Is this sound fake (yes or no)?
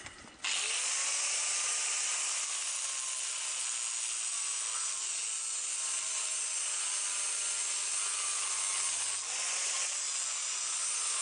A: no